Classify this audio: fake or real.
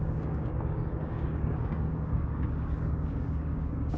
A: fake